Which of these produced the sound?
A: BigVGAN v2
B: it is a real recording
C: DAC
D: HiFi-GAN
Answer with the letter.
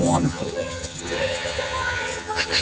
D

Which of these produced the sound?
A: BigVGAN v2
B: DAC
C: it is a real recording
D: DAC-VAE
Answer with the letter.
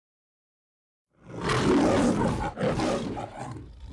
C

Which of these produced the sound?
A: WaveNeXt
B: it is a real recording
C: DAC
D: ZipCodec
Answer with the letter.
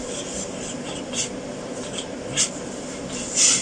B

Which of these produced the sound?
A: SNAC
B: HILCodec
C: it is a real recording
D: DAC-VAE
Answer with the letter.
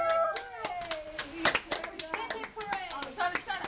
C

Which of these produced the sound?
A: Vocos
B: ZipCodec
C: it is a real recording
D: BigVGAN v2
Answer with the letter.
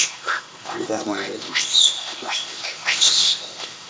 B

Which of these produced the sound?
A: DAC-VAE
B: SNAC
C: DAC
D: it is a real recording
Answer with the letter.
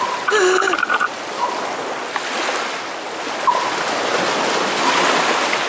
D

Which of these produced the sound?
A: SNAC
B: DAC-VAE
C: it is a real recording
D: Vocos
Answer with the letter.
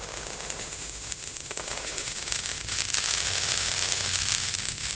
B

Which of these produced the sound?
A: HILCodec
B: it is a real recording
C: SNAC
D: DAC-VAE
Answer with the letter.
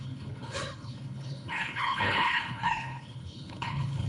A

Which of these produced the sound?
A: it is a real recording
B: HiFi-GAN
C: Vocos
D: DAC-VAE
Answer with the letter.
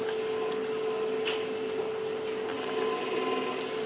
A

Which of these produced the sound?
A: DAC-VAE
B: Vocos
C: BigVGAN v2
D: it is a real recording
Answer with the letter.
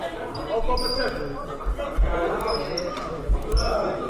D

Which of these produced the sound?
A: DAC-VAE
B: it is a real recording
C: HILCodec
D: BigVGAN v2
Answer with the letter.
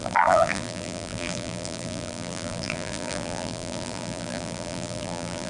D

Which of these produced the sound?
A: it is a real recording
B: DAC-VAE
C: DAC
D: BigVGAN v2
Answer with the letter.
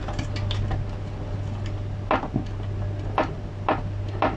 A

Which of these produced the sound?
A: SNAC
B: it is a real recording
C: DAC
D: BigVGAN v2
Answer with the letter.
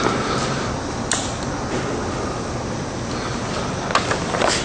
B